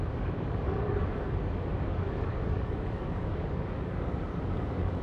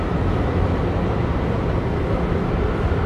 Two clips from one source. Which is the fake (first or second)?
first